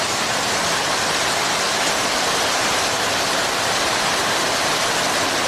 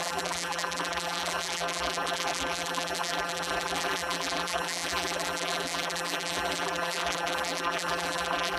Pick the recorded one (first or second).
first